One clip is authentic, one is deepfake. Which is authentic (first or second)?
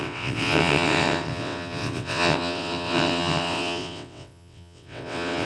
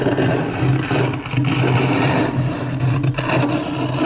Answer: second